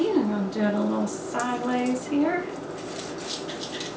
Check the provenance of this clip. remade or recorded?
recorded